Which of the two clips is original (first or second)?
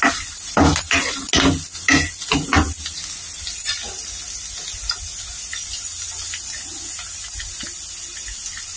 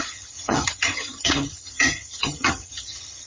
first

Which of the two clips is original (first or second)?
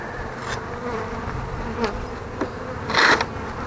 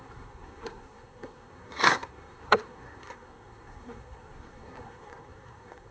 first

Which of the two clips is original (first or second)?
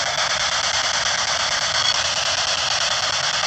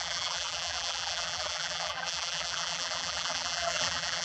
first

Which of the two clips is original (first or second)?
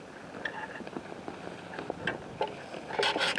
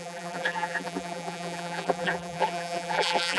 first